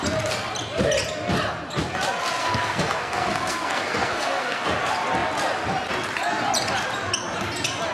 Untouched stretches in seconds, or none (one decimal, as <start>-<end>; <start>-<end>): 0.0-2.4; 4.8-7.9